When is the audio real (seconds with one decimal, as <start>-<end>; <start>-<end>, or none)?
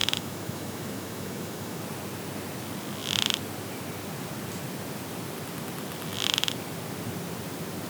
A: 1.8-7.9